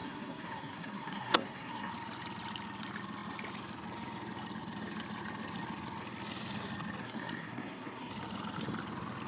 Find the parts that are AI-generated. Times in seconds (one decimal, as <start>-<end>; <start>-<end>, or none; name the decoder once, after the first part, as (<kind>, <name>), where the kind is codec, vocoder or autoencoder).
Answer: 0.0-1.9 (codec, SNAC); 7.0-8.1